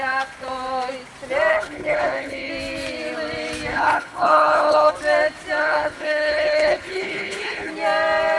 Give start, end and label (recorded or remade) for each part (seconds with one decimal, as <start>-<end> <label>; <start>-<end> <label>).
0.0-1.5 recorded; 1.5-2.5 remade; 2.5-3.7 recorded; 3.7-4.9 remade; 4.9-5.6 recorded; 5.6-7.7 remade; 7.7-8.4 recorded